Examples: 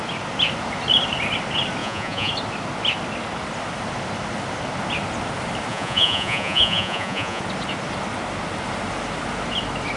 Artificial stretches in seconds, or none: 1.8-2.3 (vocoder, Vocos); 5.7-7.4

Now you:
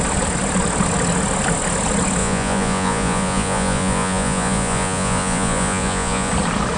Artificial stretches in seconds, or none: 2.2-6.3 (vocoder, Vocos)

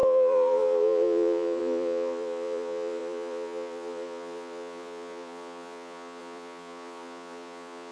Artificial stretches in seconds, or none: 0.0-7.9 (vocoder, Vocos)

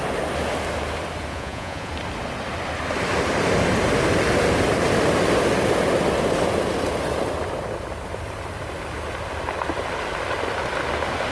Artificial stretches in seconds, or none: 1.3-1.9 (vocoder, Vocos)

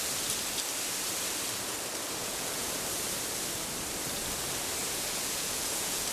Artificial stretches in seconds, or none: 2.2-2.7 (vocoder, Vocos); 4.8-6.1

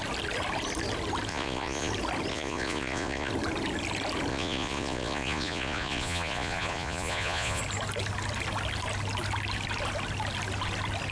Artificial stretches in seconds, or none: 1.3-1.9 (vocoder, Vocos); 2.3-3.3; 4.3-7.6